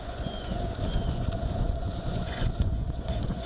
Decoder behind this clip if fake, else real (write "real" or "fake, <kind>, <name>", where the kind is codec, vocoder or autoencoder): fake, vocoder, Vocos